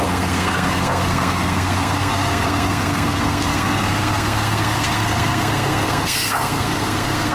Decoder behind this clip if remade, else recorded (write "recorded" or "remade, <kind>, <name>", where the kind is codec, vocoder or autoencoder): remade, codec, SNAC